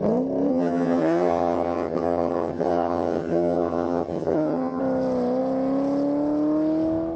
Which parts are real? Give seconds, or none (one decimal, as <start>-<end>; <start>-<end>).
0.0-0.5; 4.8-7.2